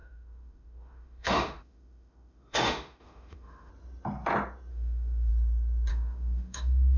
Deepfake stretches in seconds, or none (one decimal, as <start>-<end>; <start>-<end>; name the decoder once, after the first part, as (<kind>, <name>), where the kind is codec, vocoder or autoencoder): 0.0-3.7 (autoencoder, DAC-VAE); 4.7-5.3; 5.9-7.0